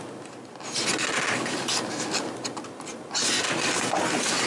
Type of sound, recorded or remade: recorded